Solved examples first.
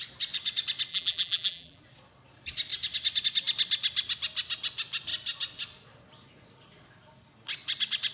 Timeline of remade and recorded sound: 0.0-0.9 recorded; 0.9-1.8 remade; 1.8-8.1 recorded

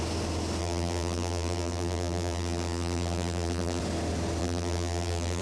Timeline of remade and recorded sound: 0.0-0.6 recorded; 0.6-3.8 remade; 3.8-4.4 recorded; 4.4-5.4 remade

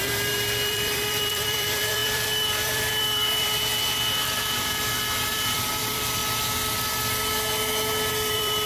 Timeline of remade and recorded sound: 0.0-6.2 remade; 6.2-8.1 recorded; 8.1-8.7 remade

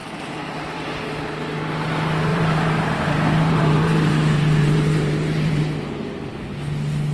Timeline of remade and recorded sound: 0.0-1.0 remade; 1.0-2.3 recorded; 2.3-5.6 remade; 5.6-7.1 recorded

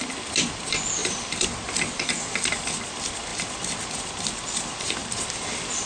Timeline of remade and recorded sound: 0.0-1.0 recorded; 1.0-1.9 remade; 1.9-5.0 recorded; 5.0-5.9 remade